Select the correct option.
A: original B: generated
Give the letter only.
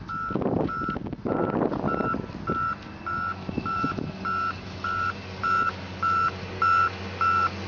A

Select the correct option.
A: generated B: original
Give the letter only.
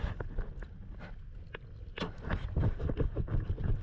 B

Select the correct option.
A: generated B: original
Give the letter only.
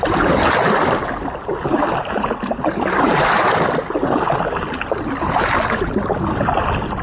B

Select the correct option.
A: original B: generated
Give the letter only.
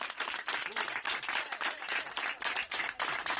B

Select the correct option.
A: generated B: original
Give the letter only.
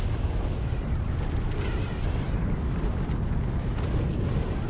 B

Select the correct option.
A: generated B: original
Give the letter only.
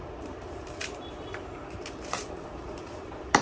A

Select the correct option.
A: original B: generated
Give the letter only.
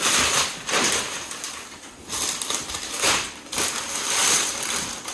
B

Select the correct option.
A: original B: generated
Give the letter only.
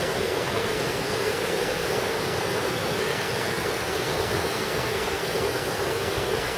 B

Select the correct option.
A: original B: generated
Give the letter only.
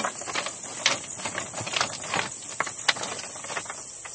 A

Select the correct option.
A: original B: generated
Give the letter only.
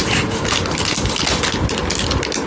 A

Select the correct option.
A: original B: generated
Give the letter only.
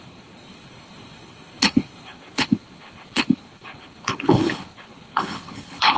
B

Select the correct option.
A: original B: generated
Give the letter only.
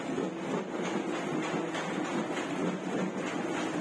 A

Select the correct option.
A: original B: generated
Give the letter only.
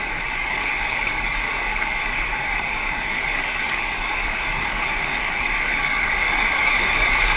B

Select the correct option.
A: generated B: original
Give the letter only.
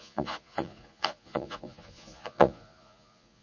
A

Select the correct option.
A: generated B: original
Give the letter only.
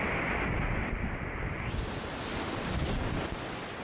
B